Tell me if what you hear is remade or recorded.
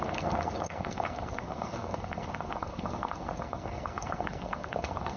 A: remade